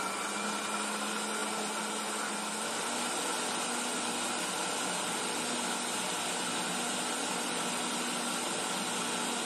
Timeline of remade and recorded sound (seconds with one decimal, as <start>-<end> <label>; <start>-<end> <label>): 0.0-9.5 recorded